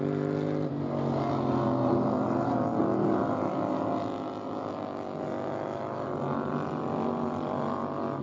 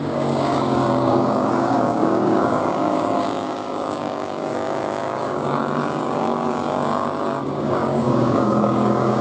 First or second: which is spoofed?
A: second